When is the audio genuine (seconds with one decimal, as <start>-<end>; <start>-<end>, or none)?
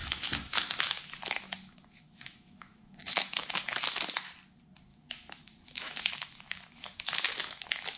3.8-4.9